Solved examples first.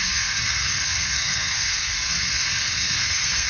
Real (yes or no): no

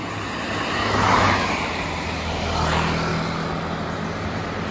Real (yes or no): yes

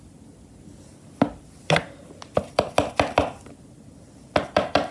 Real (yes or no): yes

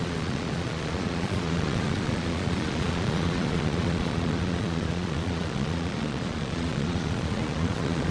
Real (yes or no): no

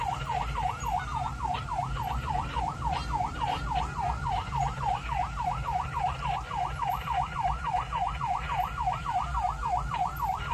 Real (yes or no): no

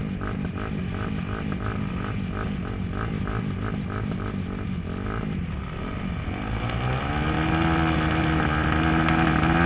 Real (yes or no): yes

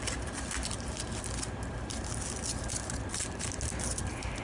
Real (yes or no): yes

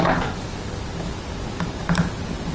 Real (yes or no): yes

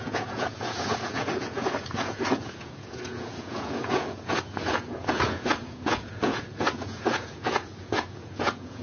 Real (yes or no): no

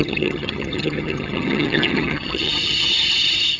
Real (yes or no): no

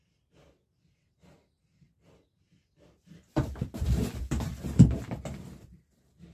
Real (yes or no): yes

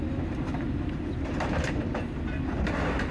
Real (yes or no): yes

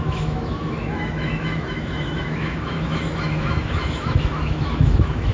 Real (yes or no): no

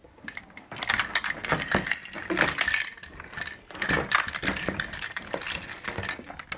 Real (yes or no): yes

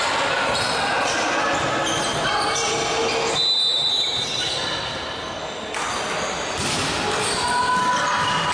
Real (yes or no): yes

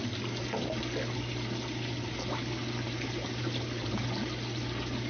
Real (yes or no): yes